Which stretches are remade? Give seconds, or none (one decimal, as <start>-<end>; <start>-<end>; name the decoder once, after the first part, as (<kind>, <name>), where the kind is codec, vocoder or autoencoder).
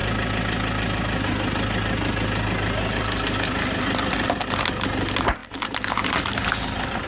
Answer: 4.1-7.1 (vocoder, BigVGAN v2)